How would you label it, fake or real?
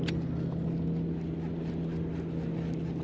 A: real